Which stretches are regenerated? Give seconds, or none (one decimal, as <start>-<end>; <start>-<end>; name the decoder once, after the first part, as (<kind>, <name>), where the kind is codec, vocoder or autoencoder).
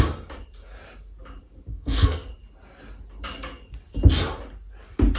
1.7-2.3 (codec, SNAC)